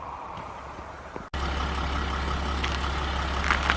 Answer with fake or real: real